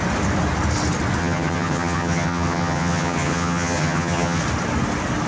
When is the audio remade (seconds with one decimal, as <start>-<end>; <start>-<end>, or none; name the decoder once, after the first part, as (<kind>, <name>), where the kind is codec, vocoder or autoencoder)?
1.2-4.4 (vocoder, HiFi-GAN)